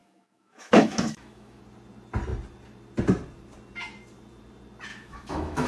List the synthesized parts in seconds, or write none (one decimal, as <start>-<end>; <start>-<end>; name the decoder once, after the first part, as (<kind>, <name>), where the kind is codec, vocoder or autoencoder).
0.0-1.6 (autoencoder, DAC-VAE); 4.9-5.7